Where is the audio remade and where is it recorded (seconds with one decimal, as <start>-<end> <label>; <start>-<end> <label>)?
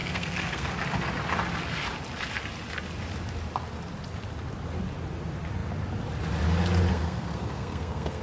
0.0-0.7 remade; 0.7-6.9 recorded; 6.9-8.2 remade